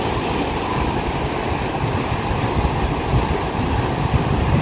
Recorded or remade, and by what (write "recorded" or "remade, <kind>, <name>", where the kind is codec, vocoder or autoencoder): recorded